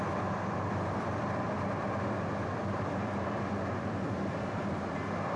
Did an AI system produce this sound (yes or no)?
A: no